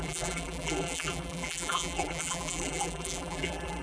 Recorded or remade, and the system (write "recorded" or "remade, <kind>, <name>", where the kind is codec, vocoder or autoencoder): remade, vocoder, BigVGAN v2